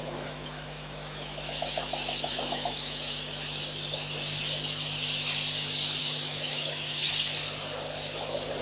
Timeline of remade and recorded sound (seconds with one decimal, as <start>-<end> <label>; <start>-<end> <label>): 0.0-3.6 remade; 3.6-6.0 recorded; 6.0-7.1 remade; 7.1-8.6 recorded